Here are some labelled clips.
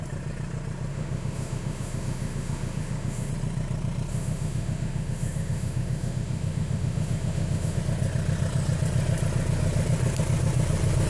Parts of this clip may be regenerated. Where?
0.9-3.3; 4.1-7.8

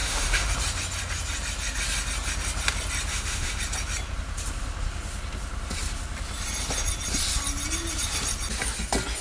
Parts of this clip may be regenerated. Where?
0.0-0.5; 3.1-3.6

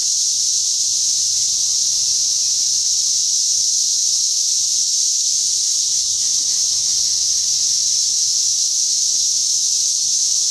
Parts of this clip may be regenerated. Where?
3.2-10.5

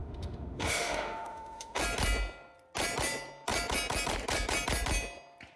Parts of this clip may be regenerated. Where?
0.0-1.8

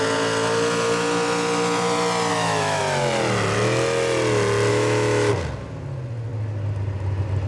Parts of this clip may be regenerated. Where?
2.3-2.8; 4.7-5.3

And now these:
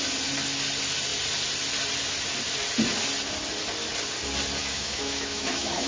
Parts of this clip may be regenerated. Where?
4.6-5.9